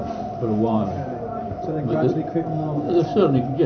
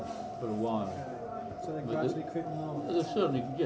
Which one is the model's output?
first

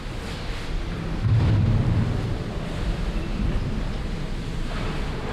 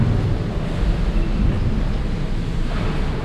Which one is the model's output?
first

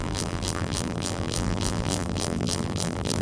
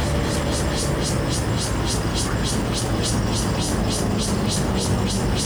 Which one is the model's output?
first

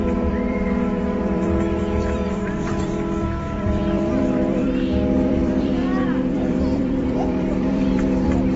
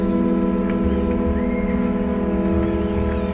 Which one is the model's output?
first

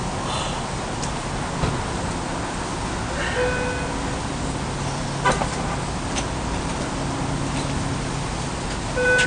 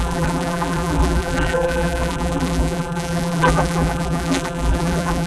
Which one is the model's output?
second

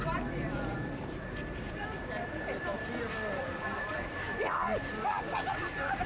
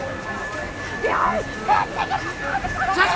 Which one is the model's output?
first